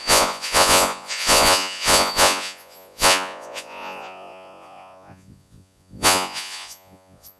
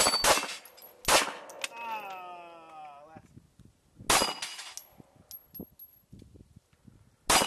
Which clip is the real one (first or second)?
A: second